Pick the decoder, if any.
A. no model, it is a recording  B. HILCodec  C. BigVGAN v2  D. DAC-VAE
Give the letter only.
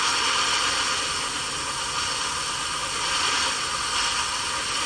A